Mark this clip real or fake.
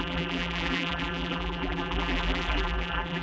fake